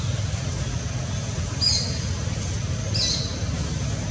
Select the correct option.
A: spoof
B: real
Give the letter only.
B